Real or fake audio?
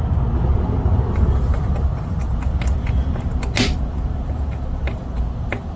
real